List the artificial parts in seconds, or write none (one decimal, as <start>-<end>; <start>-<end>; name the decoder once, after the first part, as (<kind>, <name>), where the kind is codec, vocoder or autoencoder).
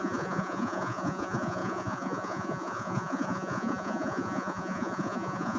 0.0-5.6 (vocoder, Vocos)